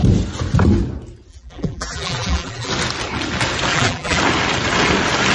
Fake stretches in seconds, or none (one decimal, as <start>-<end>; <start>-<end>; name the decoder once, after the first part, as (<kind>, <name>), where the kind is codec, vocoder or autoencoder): 1.3-2.7 (vocoder, BigVGAN v2); 3.7-4.2